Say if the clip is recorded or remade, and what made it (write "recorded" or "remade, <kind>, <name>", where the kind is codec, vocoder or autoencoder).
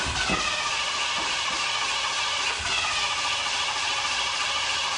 recorded